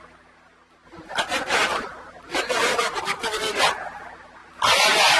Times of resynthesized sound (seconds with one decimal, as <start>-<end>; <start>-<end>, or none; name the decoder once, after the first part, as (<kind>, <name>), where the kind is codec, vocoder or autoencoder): 2.7-3.5 (codec, DAC)